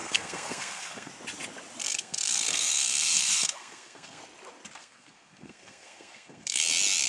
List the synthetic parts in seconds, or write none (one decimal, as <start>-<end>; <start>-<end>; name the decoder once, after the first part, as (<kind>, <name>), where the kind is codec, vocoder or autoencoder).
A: 0.0-1.1 (codec, SNAC); 1.8-4.2; 4.8-6.6

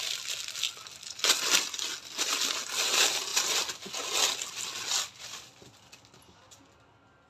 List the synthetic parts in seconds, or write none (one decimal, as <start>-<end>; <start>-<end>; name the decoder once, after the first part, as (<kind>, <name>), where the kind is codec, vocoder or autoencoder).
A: none

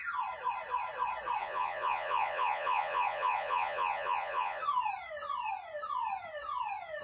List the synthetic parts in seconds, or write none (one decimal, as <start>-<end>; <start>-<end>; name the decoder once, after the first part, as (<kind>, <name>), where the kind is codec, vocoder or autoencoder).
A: 1.4-4.6 (vocoder, Vocos)

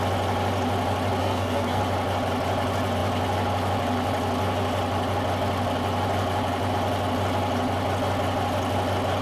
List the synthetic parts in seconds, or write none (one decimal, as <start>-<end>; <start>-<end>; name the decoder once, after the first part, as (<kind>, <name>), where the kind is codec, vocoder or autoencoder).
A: 1.2-1.8 (codec, SNAC)

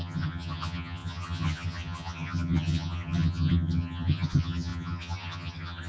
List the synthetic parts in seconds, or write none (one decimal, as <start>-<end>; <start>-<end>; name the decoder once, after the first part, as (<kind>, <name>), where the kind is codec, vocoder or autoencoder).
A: 0.0-5.9 (vocoder, HiFi-GAN)

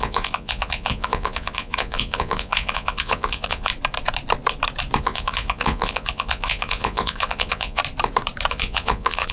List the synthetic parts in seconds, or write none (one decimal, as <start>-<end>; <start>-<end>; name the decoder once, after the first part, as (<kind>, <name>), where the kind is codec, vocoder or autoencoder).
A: 0.0-3.7 (vocoder, Vocos); 5.0-7.8; 8.5-9.3

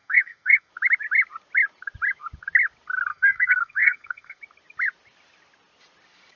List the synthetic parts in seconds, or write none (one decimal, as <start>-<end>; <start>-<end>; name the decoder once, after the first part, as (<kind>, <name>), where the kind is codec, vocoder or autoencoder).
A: 0.0-0.7 (codec, SNAC); 3.1-4.4

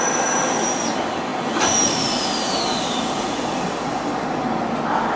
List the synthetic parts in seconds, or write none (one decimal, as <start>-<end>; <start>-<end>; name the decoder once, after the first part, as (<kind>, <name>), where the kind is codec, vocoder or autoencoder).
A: none